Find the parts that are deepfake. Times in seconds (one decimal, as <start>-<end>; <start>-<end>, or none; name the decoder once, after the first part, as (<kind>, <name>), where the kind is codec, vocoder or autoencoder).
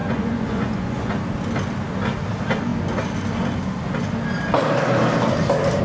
0.0-1.2 (vocoder, Vocos)